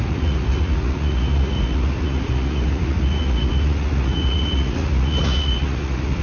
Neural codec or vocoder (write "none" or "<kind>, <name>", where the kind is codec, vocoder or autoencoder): vocoder, Vocos